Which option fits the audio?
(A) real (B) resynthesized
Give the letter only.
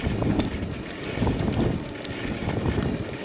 A